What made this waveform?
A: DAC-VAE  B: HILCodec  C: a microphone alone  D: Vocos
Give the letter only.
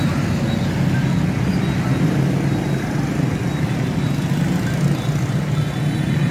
C